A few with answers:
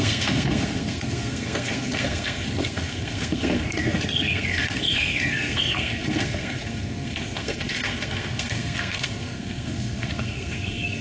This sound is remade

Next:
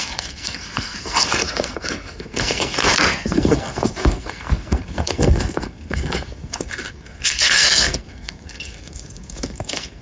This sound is remade